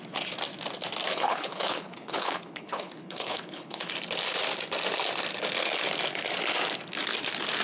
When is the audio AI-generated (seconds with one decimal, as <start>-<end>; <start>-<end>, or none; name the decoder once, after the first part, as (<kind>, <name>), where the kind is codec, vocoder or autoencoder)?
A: 1.1-3.9 (codec, HILCodec)